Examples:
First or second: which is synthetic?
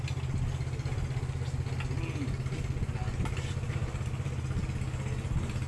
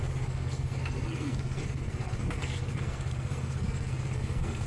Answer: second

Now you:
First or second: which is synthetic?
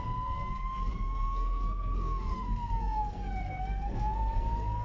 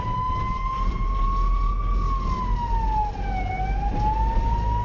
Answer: first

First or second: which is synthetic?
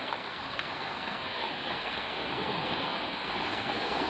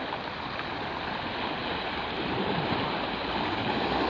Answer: first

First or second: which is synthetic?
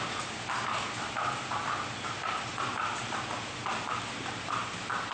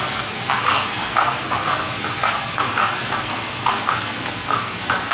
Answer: second